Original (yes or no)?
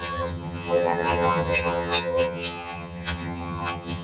no